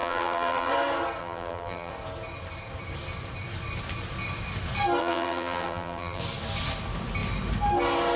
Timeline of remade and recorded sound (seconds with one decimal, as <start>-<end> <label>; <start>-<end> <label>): 0.0-0.7 remade; 0.7-1.2 recorded; 1.2-1.9 remade; 1.9-5.0 recorded; 5.0-6.2 remade; 6.2-8.2 recorded